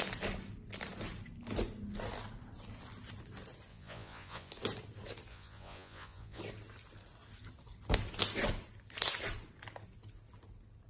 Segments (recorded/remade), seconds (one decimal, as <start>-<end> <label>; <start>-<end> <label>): 0.0-3.7 recorded; 3.7-4.5 remade; 4.5-5.3 recorded; 5.3-6.4 remade; 6.4-10.9 recorded